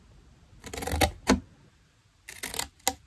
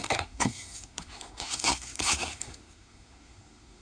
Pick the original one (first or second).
first